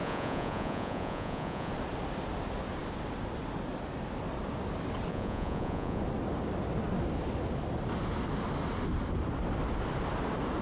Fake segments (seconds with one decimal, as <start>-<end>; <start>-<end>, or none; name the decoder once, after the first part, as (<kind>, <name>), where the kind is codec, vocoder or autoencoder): 0.0-1.7 (vocoder, Vocos); 5.1-6.0